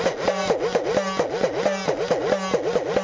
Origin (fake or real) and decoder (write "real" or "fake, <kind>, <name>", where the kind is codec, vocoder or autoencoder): real